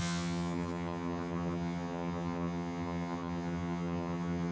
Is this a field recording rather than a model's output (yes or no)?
no